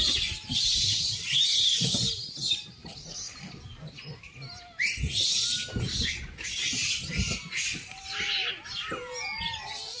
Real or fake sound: real